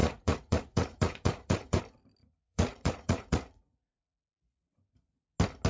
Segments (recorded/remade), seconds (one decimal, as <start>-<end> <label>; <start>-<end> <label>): 0.0-1.8 remade; 1.8-2.2 recorded; 2.2-4.2 remade; 4.2-5.7 recorded